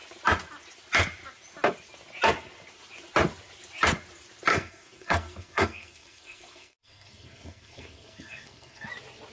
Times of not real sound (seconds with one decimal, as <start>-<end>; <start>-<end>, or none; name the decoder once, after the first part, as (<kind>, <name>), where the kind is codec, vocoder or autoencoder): 4.5-8.9 (codec, SNAC)